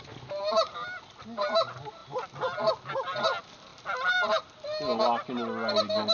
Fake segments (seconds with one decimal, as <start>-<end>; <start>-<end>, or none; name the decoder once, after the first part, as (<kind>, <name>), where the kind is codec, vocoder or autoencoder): none